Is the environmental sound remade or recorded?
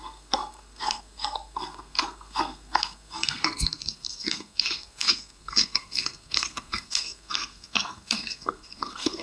remade